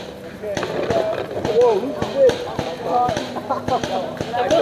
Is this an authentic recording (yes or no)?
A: yes